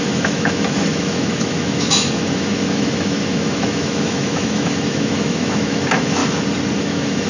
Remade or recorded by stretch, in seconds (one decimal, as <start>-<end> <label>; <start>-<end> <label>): 0.0-6.2 remade; 6.2-6.8 recorded; 6.8-7.3 remade